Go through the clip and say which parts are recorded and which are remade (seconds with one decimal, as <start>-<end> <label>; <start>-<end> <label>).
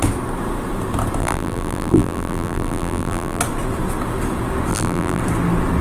0.0-1.2 recorded; 1.2-3.4 remade; 3.4-4.7 recorded; 4.7-5.2 remade; 5.2-5.8 recorded